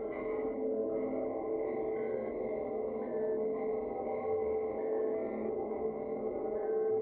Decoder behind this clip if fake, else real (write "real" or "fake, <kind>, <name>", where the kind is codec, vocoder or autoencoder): real